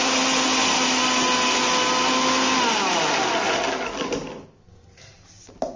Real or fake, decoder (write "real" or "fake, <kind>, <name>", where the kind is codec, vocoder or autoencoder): real